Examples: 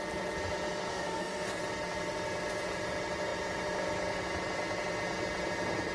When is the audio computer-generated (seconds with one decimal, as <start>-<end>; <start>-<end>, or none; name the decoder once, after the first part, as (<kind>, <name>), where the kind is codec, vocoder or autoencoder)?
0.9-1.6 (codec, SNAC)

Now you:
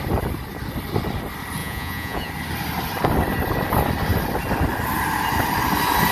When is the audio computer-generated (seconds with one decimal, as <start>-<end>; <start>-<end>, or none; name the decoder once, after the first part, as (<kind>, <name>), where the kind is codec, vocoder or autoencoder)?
1.6-2.3 (vocoder, Vocos)

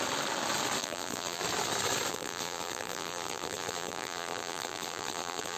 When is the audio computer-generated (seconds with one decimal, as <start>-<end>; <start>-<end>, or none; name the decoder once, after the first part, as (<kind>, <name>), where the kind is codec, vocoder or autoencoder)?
0.8-1.4 (vocoder, BigVGAN v2); 2.1-5.6